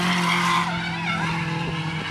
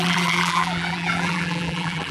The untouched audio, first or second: first